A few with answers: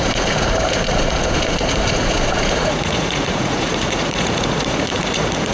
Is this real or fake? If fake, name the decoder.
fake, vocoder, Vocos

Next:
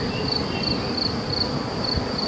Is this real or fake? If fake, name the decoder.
real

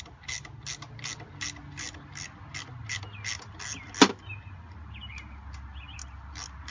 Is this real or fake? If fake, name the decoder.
real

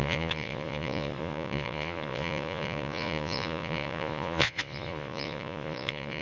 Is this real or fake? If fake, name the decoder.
fake, vocoder, Vocos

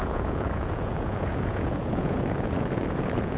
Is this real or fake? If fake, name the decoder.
fake, vocoder, Vocos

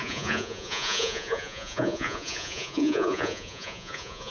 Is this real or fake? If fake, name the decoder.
fake, vocoder, Vocos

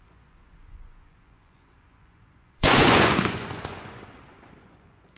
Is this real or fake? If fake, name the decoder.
fake, vocoder, Vocos